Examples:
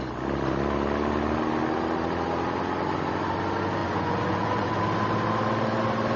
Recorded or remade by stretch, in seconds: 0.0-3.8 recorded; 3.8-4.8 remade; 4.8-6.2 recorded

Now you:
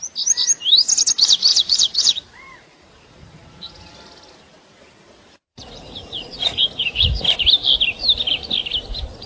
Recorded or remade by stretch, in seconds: 0.0-1.5 recorded; 1.5-3.9 remade; 3.9-5.5 recorded; 5.5-7.2 remade; 7.2-9.3 recorded

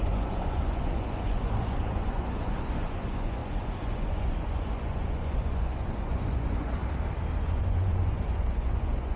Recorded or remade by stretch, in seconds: 0.0-6.8 remade; 6.8-7.4 recorded; 7.4-9.2 remade

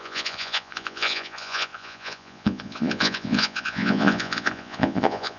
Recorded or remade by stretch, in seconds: 0.0-5.4 remade